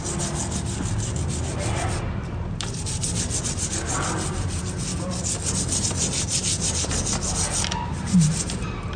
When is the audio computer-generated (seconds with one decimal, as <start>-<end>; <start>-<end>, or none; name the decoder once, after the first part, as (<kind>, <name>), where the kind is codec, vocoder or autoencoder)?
none